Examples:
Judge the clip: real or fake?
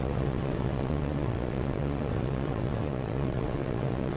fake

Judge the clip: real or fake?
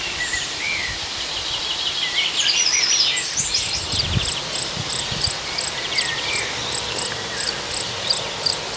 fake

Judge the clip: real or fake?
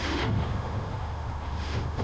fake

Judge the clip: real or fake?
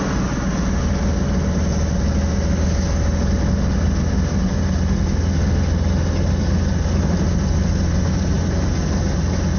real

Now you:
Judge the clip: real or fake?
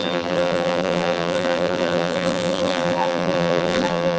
fake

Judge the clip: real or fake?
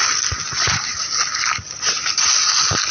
real